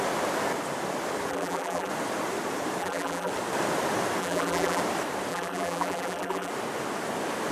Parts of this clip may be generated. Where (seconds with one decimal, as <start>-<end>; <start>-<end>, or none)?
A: 1.3-1.9; 2.8-3.3; 4.2-4.8; 5.3-6.5

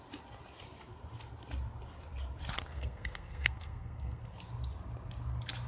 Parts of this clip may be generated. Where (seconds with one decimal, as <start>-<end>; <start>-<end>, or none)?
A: 2.7-4.2

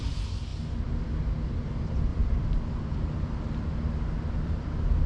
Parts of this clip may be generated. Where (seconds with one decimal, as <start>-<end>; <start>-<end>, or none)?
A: 2.1-5.1

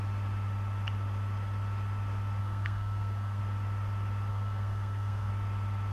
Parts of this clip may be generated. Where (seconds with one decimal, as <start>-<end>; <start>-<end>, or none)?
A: 2.4-3.4; 4.3-5.3

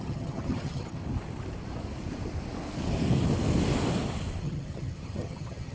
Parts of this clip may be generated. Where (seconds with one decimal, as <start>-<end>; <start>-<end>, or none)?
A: 0.0-1.0; 4.4-5.7

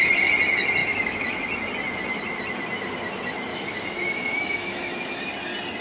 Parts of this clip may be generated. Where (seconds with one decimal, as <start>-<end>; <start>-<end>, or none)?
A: 0.8-1.7; 3.5-5.2

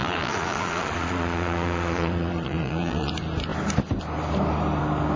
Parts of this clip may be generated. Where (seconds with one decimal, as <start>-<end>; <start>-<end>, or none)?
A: 0.0-3.1